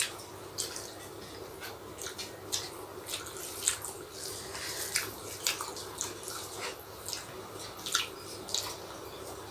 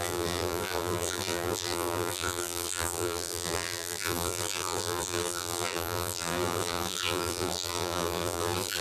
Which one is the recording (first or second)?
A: first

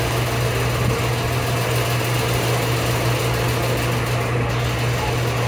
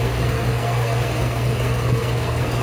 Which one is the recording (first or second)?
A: first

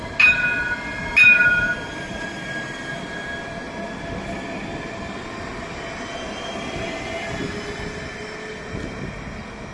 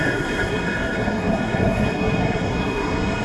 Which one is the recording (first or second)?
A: first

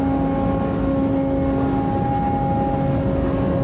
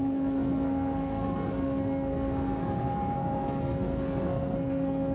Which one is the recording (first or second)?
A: first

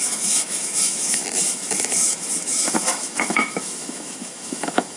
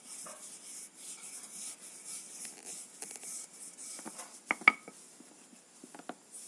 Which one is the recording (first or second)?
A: second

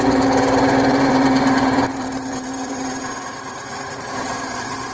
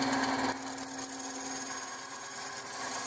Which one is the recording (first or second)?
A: second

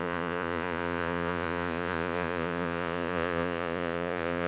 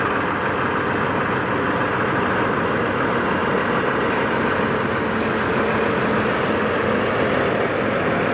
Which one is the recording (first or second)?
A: second